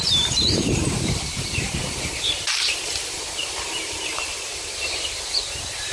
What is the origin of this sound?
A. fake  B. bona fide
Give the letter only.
A